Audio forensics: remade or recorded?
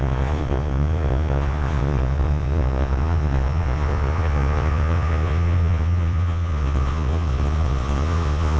remade